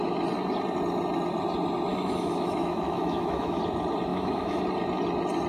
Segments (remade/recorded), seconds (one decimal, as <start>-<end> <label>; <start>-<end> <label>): 0.0-1.9 recorded; 1.9-3.6 remade; 3.6-4.1 recorded; 4.1-4.6 remade; 4.6-5.5 recorded